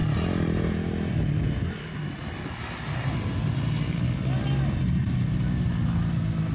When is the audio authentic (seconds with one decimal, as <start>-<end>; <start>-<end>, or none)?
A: 0.0-6.5